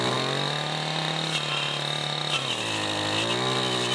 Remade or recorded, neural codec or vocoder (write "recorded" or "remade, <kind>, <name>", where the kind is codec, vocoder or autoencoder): recorded